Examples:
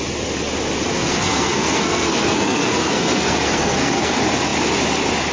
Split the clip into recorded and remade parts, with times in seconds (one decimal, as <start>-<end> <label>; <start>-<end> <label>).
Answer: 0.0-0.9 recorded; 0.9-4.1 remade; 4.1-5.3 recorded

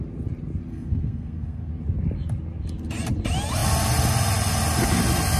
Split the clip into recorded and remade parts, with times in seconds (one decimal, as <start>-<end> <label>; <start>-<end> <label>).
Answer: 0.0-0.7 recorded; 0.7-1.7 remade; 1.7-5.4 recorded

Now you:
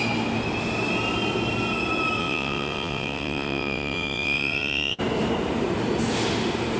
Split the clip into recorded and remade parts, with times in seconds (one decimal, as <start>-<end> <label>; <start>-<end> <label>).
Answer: 0.0-2.2 recorded; 2.2-5.0 remade; 5.0-6.8 recorded

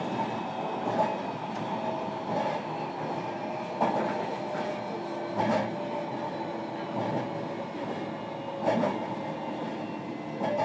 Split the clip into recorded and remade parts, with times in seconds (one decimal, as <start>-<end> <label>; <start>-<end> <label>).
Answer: 0.0-10.6 recorded

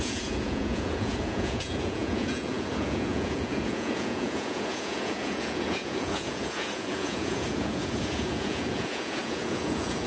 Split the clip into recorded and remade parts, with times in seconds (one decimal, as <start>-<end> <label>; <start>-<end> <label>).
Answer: 0.0-10.1 remade